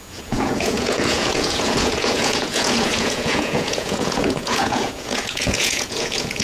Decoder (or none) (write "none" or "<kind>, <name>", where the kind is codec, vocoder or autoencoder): vocoder, Vocos